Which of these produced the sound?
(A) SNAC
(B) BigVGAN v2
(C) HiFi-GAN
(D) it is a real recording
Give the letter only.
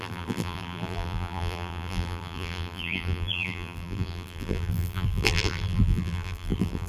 B